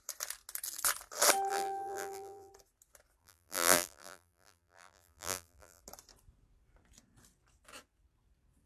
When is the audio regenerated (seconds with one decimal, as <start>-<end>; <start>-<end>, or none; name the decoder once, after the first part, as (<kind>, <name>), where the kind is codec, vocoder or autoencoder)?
1.5-2.5 (vocoder, BigVGAN v2); 3.2-5.8

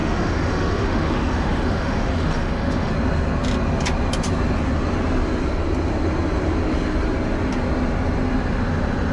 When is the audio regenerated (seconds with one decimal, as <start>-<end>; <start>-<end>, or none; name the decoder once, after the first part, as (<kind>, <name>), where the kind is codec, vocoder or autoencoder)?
0.0-2.9 (autoencoder, DAC-VAE)

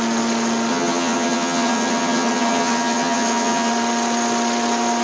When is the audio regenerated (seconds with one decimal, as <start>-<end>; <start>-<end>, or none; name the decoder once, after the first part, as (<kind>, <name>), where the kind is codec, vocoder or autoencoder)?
0.7-3.7 (vocoder, HiFi-GAN)

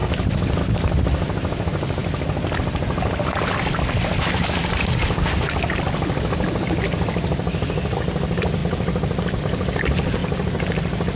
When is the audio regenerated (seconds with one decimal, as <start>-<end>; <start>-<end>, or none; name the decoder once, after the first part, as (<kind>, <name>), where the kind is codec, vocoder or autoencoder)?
10.2-11.2 (vocoder, BigVGAN v2)